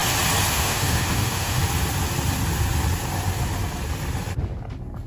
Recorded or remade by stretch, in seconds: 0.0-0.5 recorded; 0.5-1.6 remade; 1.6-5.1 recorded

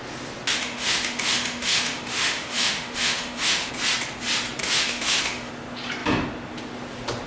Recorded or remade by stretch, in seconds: 0.0-0.5 recorded; 0.5-3.7 remade; 3.7-4.6 recorded; 4.6-5.5 remade; 5.5-7.3 recorded

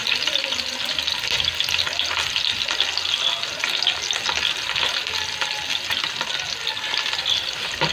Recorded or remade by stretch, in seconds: 0.0-7.9 recorded

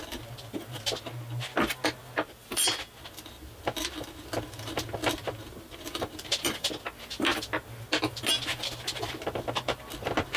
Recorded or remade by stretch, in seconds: 0.0-10.4 recorded

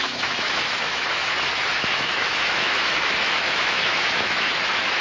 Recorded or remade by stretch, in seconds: 0.0-5.0 remade

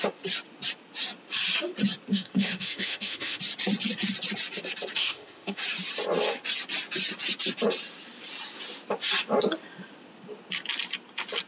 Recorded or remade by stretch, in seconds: 0.0-2.1 recorded; 2.1-3.4 remade; 3.4-5.0 recorded; 5.0-5.6 remade; 5.6-11.5 recorded

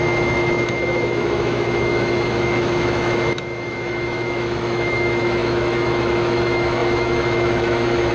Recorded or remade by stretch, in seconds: 0.0-8.1 remade